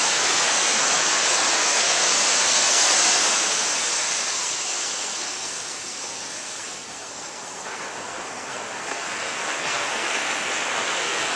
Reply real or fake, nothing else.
fake